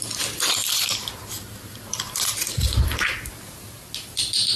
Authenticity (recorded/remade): recorded